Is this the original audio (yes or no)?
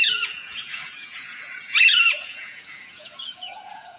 no